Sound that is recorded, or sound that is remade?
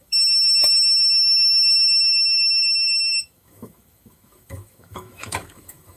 remade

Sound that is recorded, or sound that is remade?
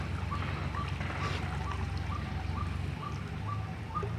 recorded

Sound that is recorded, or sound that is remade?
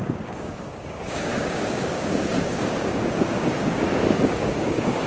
remade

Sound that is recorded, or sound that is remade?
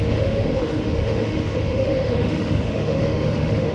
remade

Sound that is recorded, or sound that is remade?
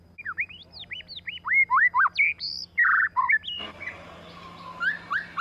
recorded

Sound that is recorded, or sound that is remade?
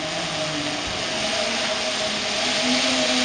recorded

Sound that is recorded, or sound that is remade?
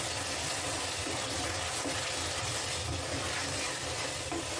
recorded